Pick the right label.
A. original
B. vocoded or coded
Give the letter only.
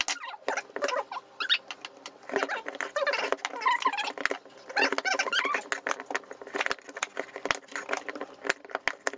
A